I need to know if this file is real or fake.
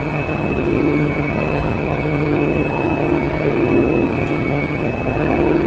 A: fake